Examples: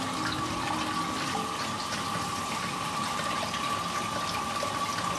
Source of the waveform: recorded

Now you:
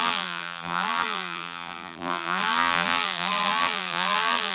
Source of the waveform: remade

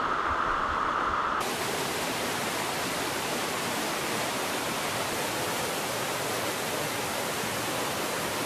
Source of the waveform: recorded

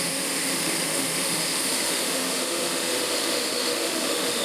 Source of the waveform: remade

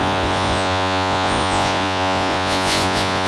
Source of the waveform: remade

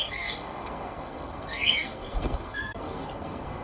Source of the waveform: remade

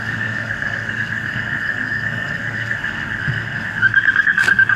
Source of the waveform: remade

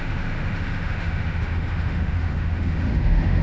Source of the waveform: remade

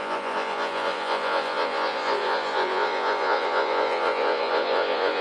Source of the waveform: remade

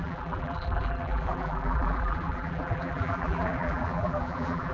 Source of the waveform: remade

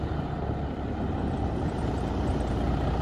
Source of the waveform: remade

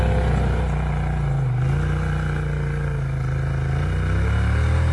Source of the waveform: recorded